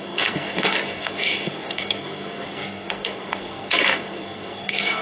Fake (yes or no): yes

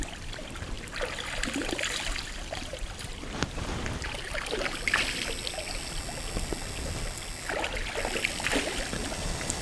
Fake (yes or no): no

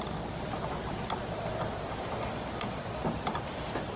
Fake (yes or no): no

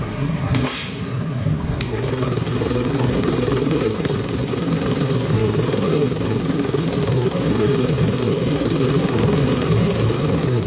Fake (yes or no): yes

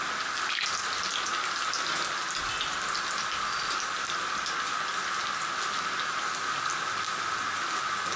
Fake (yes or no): no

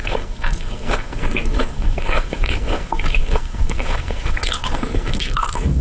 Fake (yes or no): yes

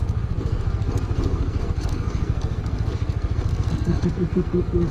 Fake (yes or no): yes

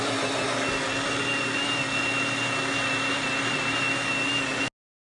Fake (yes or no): no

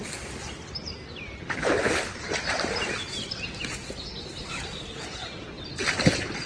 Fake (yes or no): no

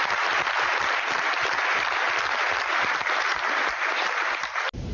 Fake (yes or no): no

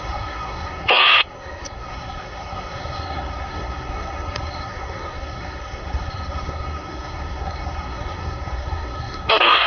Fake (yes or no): yes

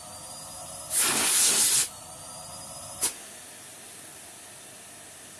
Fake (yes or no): no